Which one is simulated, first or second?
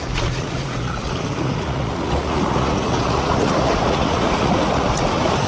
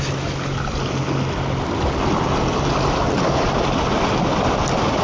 first